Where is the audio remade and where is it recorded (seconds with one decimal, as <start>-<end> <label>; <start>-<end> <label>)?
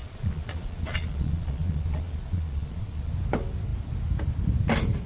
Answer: 0.0-3.1 remade; 3.1-5.1 recorded